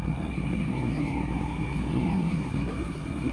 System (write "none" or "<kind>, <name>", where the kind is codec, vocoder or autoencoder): codec, SNAC